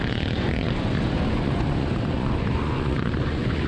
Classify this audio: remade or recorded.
remade